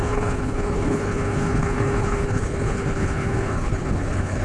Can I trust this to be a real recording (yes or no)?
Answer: no